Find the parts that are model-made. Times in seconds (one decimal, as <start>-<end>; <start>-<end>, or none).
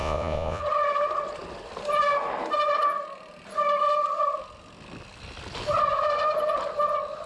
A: 0.0-0.6